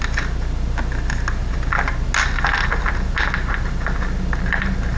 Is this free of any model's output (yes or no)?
yes